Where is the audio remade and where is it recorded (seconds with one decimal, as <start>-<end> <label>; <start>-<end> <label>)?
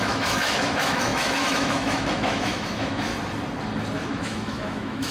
0.0-3.1 remade; 3.1-4.0 recorded; 4.0-5.1 remade